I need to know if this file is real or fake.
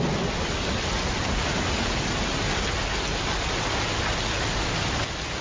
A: real